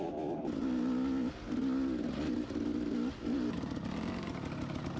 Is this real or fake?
real